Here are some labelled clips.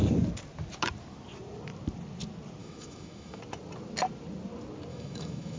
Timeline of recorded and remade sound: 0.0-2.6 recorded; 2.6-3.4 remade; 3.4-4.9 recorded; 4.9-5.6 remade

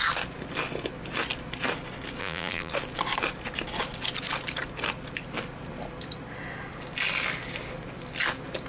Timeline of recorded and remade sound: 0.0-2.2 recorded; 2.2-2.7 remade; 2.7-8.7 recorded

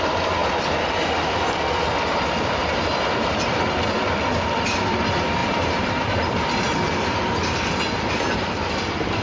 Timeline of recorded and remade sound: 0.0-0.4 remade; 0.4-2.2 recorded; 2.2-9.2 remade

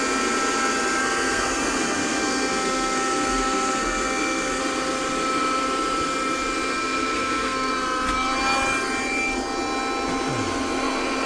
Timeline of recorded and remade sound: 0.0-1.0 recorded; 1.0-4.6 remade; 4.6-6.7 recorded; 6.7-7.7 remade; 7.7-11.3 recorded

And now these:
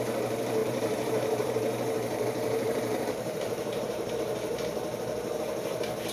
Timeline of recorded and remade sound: 0.0-0.6 recorded; 0.6-4.1 remade; 4.1-6.1 recorded